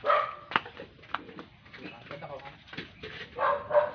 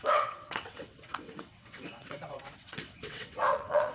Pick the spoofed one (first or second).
second